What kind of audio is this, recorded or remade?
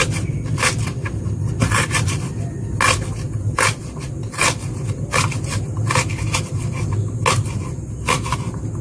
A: recorded